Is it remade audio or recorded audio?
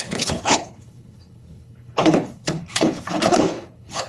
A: remade